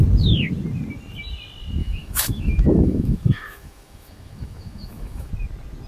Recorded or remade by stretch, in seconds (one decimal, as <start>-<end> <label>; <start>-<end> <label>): 0.0-1.8 recorded; 1.8-5.3 remade; 5.3-5.9 recorded